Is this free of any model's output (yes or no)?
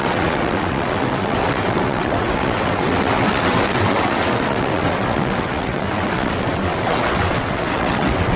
no